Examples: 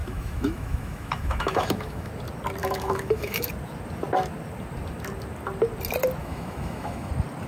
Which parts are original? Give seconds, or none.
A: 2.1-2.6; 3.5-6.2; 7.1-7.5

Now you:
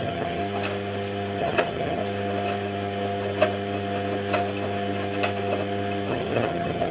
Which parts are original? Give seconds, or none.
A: 0.4-1.4; 2.0-6.1

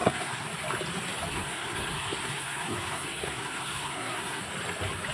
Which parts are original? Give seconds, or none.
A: 0.5-1.3; 4.4-5.1

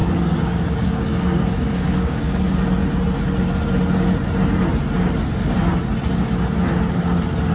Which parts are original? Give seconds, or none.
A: 2.4-7.5

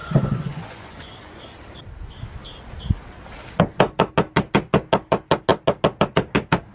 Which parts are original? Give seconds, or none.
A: 1.4-6.7

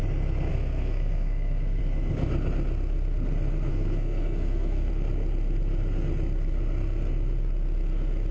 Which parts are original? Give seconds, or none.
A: 0.0-0.5; 1.8-3.7; 4.9-8.3

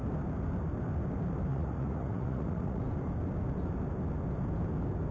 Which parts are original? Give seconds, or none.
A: 0.0-1.5; 2.8-5.1